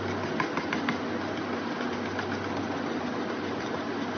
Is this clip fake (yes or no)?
no